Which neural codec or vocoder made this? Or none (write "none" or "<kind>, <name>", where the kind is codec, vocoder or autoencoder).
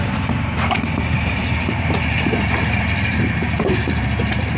vocoder, BigVGAN v2